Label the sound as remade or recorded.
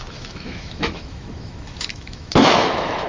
remade